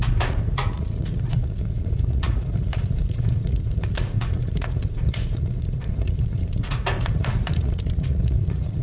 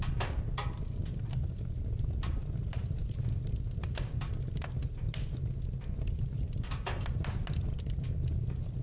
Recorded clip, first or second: second